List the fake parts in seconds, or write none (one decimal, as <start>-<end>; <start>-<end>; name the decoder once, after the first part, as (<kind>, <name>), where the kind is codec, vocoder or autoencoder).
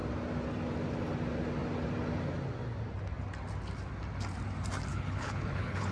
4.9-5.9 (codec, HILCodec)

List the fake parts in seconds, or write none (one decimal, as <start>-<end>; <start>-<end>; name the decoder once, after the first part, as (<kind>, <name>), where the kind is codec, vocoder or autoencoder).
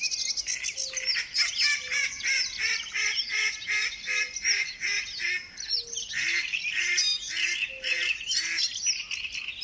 none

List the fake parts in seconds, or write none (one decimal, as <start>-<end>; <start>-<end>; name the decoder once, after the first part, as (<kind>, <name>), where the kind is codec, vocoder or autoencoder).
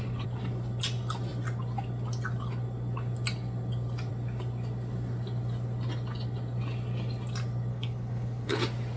7.7-8.6 (codec, HILCodec)